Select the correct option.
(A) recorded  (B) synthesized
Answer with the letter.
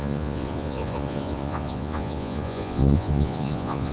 B